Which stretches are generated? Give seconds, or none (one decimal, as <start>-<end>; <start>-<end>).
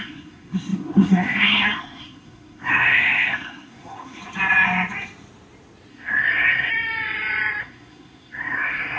0.0-4.2; 5.9-6.7; 7.6-9.0